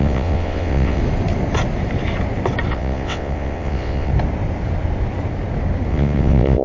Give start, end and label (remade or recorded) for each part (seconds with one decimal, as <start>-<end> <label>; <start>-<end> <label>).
0.0-1.0 remade; 1.0-2.7 recorded; 2.7-4.1 remade; 4.1-5.9 recorded; 5.9-6.6 remade